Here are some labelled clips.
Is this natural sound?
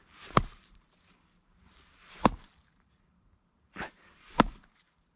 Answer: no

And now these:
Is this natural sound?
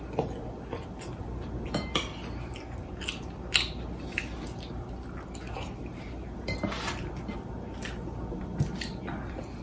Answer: yes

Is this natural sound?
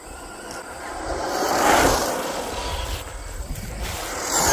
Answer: no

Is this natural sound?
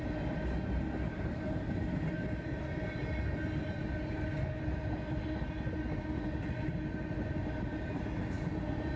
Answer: yes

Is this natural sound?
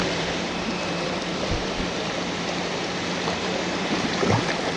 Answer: no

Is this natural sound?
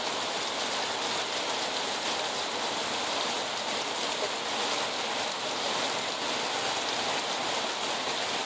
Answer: yes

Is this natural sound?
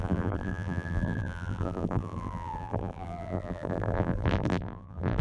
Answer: no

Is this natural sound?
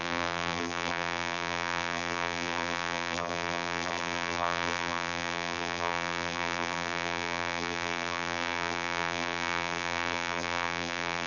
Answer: no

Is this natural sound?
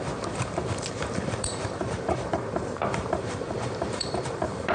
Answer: no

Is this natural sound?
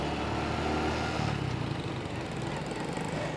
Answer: yes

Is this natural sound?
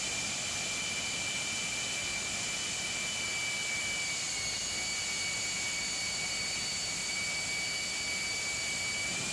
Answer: yes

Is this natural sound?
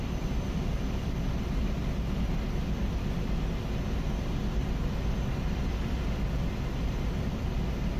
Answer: no